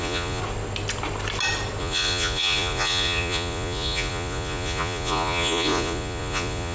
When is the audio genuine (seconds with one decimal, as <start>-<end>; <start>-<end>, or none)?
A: 0.4-1.8